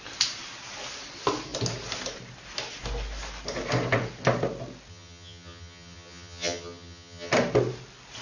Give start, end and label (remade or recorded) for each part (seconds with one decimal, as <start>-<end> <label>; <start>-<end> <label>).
0.0-4.9 recorded; 4.9-7.3 remade; 7.3-8.2 recorded